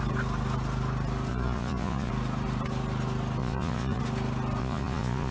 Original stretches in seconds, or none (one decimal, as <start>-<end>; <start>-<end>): 0.0-1.3; 2.1-3.4; 4.0-4.6